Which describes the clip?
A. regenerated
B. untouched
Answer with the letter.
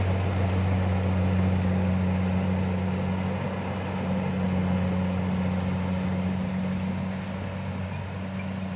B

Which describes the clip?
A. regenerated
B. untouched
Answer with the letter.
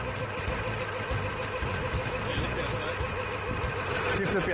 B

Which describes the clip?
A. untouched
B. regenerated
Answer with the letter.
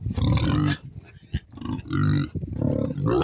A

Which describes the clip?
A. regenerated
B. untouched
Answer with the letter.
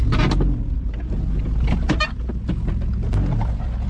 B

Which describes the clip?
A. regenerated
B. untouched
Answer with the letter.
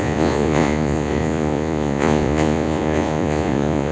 A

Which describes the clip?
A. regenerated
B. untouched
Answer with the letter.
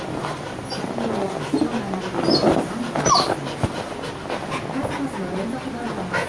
B